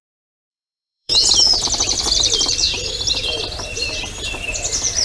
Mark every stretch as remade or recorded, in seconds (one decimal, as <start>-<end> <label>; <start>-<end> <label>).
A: 0.0-0.5 recorded; 0.5-1.3 remade; 1.3-5.0 recorded